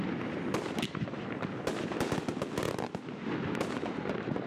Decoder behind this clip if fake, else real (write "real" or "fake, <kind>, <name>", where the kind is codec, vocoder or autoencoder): real